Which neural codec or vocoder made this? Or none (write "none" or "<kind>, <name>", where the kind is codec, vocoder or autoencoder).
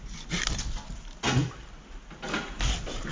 none